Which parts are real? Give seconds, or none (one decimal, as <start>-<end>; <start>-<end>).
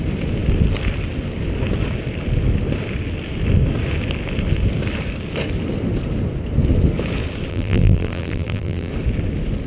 0.0-7.5; 8.9-9.7